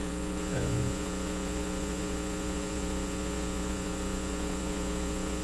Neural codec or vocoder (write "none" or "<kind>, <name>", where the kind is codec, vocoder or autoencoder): vocoder, Vocos